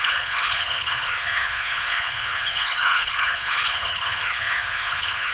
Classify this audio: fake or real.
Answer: fake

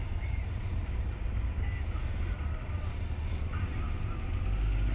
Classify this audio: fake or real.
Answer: real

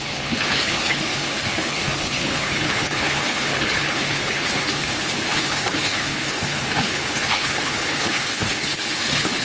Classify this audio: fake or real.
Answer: fake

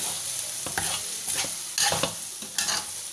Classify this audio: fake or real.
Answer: real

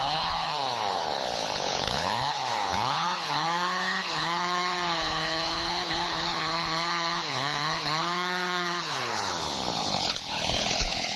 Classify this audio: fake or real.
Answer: fake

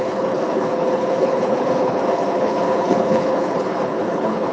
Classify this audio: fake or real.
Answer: fake